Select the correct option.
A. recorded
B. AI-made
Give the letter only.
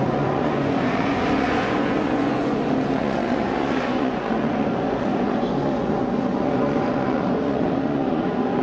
B